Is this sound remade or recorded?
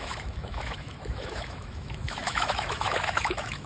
remade